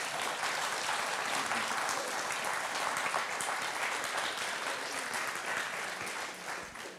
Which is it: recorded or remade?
recorded